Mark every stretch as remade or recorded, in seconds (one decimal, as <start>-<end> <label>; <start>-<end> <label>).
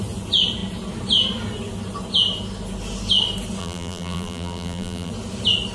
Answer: 0.0-3.6 recorded; 3.6-5.1 remade; 5.1-5.7 recorded